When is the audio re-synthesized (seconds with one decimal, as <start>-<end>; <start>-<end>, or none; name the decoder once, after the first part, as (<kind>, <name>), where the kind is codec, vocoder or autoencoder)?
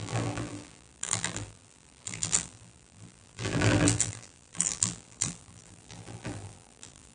0.0-7.1 (vocoder, BigVGAN v2)